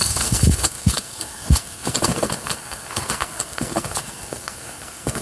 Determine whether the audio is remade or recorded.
remade